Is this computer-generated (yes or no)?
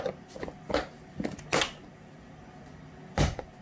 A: no